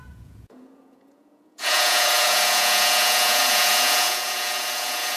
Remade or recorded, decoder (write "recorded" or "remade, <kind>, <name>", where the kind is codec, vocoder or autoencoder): remade, vocoder, Vocos